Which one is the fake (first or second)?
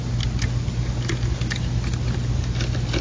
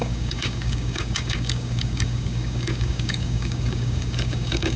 second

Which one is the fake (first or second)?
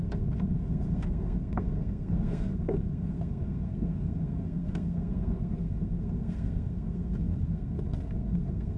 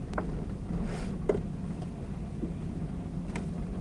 first